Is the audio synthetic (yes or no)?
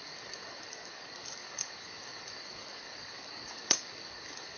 yes